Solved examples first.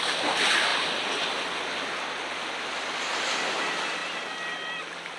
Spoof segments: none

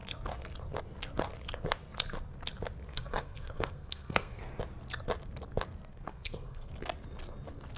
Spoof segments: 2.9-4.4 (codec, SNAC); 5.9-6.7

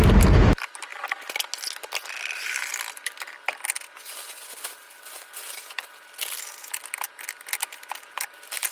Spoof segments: none